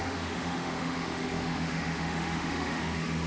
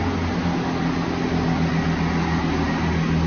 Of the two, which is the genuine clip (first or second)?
second